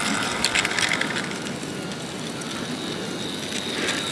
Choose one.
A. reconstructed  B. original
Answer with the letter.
B